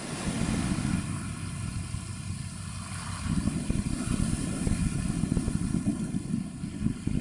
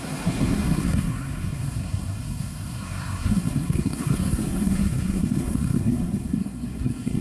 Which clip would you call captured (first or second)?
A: first